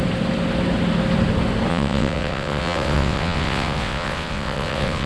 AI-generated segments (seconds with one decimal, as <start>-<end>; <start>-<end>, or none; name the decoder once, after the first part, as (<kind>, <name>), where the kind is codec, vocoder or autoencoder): 1.7-5.1 (vocoder, WaveNeXt)